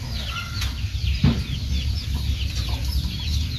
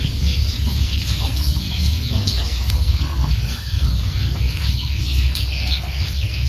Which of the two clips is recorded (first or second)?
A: first